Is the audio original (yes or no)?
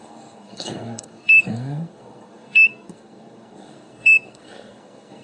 no